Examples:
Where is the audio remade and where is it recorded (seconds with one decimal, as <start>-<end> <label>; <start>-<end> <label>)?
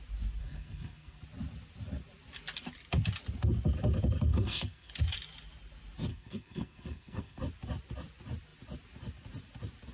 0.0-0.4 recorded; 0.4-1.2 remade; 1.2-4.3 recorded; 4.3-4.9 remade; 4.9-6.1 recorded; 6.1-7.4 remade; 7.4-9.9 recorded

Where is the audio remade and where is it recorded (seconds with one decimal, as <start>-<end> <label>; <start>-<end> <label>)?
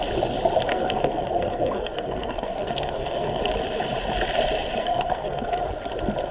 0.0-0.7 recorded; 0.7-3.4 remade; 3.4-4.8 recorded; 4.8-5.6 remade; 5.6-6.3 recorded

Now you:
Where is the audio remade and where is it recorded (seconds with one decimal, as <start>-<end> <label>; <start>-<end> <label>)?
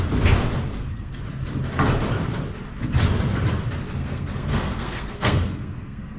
0.0-0.6 recorded; 0.6-1.2 remade; 1.2-4.0 recorded; 4.0-6.2 remade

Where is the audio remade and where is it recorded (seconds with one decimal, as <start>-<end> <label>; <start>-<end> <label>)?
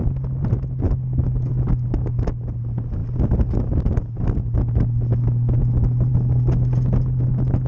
0.0-7.7 recorded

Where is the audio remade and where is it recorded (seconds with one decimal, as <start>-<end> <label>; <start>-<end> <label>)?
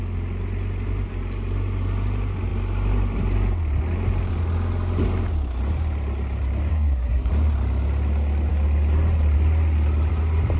0.0-6.7 recorded; 6.7-7.3 remade; 7.3-10.6 recorded